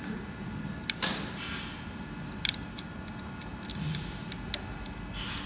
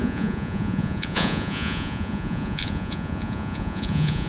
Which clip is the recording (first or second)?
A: first